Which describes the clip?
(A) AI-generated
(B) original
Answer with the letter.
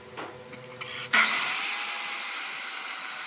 B